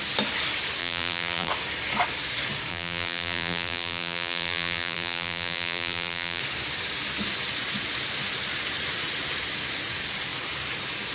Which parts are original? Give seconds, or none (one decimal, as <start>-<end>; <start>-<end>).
0.0-0.8; 1.5-2.7; 6.4-11.1